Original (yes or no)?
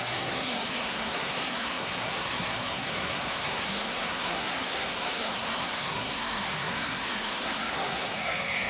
no